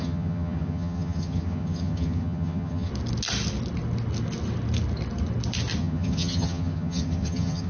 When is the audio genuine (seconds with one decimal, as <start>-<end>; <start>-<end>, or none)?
2.9-5.8